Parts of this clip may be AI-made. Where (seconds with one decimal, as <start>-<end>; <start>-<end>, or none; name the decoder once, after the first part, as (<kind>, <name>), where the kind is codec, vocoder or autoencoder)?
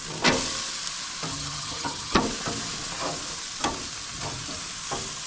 1.3-2.2 (vocoder, HiFi-GAN)